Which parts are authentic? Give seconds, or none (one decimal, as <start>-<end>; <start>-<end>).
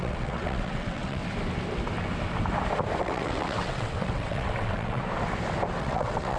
1.2-3.0; 5.0-5.8